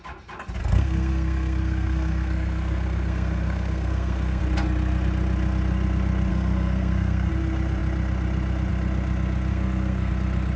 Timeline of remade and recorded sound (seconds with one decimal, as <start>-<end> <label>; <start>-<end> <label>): 0.0-0.6 recorded; 0.6-4.4 remade; 4.4-6.3 recorded; 6.3-7.3 remade; 7.3-9.5 recorded; 9.5-10.1 remade; 10.1-10.6 recorded